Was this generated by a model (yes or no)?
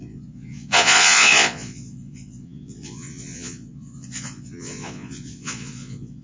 yes